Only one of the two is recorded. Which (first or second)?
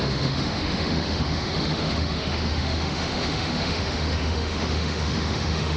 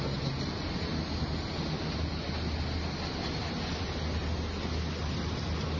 second